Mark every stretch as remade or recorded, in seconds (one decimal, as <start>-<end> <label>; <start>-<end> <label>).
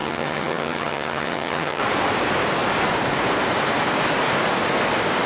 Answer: 0.0-1.8 remade; 1.8-5.3 recorded